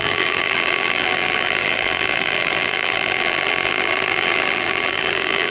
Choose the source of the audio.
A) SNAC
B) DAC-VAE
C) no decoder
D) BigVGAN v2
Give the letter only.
D